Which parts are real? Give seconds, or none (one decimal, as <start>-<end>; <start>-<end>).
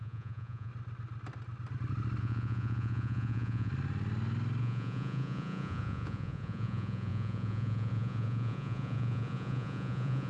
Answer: 0.7-2.2; 3.7-4.6